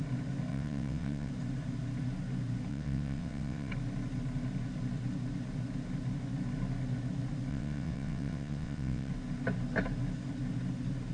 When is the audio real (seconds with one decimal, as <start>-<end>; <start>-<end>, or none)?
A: 0.0-0.5; 1.3-2.7; 3.7-7.5; 9.1-11.1